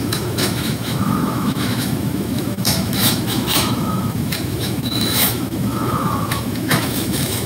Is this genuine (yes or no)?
no